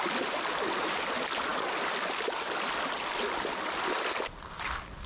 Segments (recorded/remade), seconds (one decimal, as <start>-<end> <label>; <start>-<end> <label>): 0.0-5.1 recorded